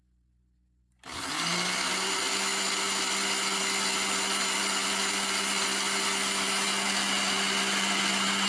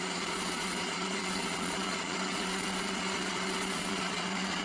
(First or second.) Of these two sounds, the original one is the first